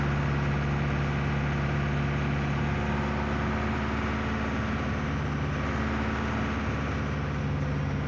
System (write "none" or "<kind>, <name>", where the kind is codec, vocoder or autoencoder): none